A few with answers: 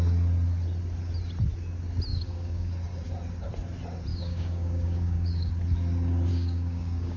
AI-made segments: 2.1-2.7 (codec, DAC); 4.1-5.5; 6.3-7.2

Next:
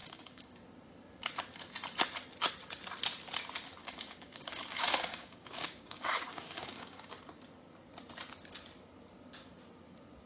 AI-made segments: 0.0-0.6 (codec, DAC); 3.8-7.1